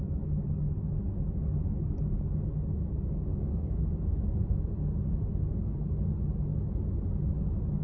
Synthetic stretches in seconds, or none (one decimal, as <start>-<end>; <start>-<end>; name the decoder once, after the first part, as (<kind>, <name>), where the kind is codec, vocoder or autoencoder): 3.3-3.8 (codec, DAC)